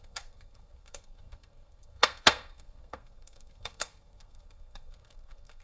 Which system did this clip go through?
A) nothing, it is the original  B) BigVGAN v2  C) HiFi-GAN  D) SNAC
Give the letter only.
D